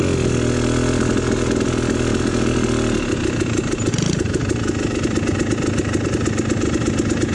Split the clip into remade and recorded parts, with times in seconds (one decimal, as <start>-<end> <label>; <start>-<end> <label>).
0.0-7.3 recorded